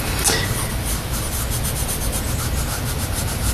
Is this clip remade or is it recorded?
recorded